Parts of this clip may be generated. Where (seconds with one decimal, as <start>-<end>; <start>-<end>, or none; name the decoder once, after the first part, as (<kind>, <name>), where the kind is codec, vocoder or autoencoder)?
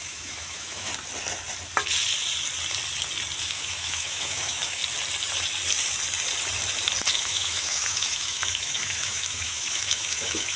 0.0-0.9 (autoencoder, DAC-VAE); 3.4-4.8; 7.1-10.6